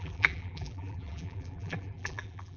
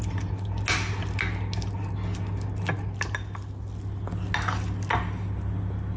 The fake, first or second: first